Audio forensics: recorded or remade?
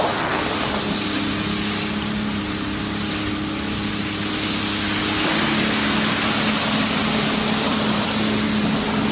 recorded